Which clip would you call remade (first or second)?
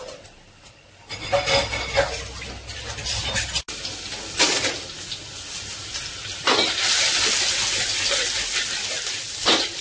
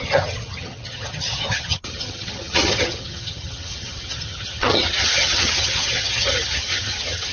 second